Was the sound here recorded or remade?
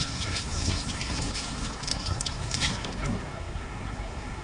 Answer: remade